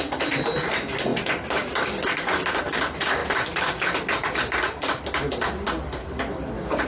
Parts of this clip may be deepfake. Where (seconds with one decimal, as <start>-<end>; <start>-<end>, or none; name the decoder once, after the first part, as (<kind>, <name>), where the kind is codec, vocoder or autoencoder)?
none